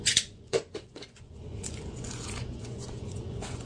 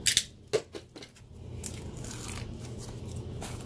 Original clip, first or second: second